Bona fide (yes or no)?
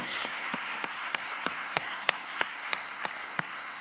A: no